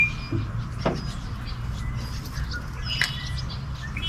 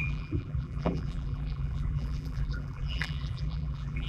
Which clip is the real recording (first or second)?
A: first